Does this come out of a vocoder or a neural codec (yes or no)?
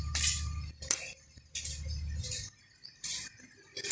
no